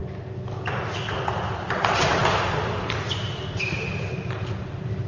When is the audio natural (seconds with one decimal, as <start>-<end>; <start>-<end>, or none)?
0.0-5.1